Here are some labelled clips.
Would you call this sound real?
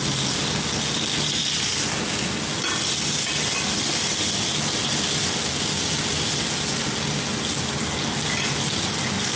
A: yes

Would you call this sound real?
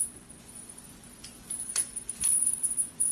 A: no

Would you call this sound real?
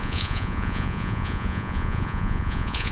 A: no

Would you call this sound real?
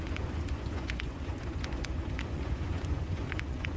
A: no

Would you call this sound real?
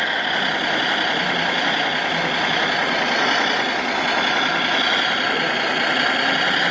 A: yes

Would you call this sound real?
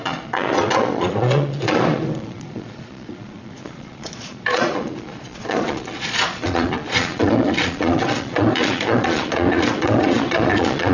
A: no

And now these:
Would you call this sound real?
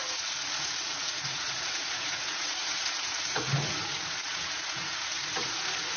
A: no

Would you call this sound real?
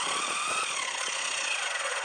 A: no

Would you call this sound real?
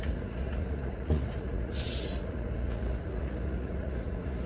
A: no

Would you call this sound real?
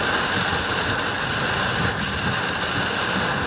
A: yes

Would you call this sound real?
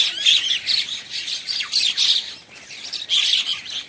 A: yes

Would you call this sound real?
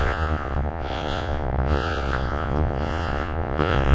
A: no